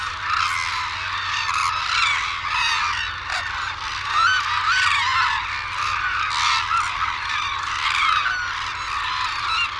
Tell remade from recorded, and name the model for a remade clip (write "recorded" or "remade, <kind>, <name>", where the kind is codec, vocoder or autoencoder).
recorded